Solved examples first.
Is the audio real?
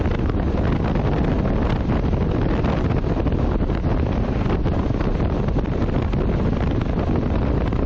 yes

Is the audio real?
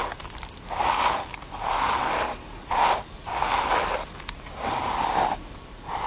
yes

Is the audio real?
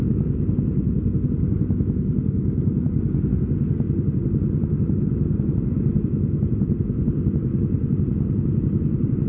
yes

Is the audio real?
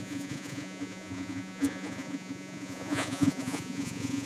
no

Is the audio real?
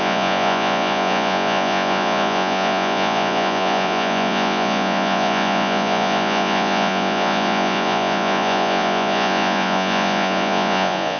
no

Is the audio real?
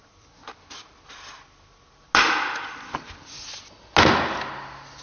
yes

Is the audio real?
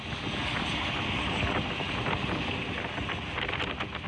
yes